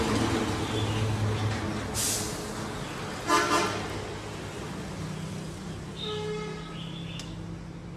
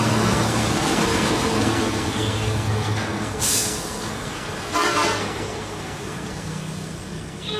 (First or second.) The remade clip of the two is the second